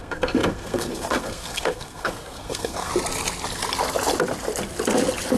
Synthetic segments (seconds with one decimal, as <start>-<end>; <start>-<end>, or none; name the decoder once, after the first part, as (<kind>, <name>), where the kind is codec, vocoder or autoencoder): 0.0-2.9 (codec, SNAC)